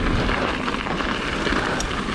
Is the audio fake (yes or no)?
no